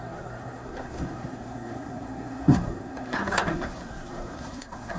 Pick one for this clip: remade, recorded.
remade